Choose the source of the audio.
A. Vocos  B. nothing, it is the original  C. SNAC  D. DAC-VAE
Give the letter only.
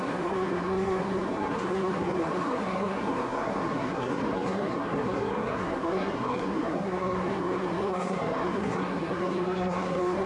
C